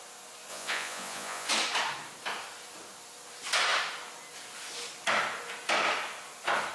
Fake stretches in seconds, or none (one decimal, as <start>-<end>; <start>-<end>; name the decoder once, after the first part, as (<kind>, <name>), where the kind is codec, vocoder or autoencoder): 0.5-1.5 (vocoder, Vocos)